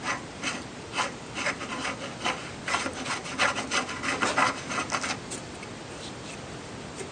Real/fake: real